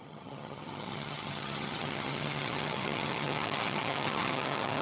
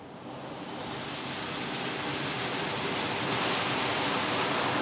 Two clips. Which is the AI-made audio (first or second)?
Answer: first